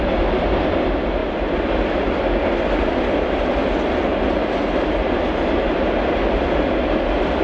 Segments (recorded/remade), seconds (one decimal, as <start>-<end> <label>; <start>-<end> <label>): 0.0-7.4 recorded